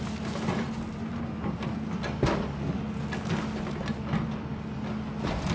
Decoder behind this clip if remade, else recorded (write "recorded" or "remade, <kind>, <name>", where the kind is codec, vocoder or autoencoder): recorded